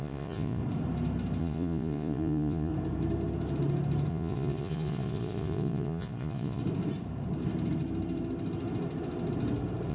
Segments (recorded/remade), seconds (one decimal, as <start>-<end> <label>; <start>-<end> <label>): 0.0-0.6 remade; 0.6-1.4 recorded; 1.4-2.7 remade; 2.7-4.1 recorded; 4.1-6.6 remade; 6.6-9.9 recorded